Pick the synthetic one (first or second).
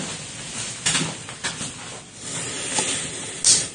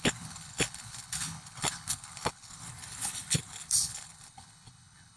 second